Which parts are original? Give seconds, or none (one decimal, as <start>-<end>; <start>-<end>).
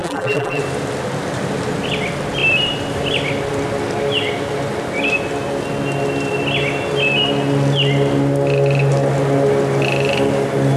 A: 0.6-10.8